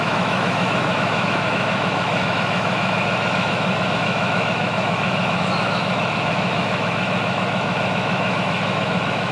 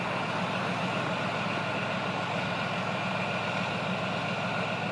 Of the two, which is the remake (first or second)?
first